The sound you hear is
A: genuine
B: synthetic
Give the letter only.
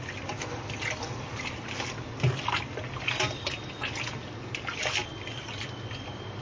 A